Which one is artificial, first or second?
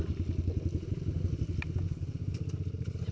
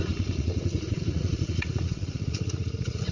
second